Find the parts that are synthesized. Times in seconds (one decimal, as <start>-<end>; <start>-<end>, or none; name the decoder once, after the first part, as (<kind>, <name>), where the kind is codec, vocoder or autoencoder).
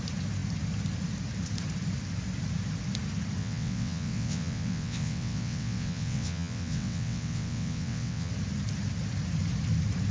3.4-8.3 (vocoder, WaveNeXt)